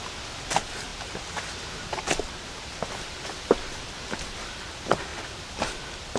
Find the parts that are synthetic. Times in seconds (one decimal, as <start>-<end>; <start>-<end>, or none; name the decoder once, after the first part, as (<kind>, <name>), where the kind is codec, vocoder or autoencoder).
none